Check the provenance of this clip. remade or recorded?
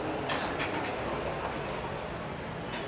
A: recorded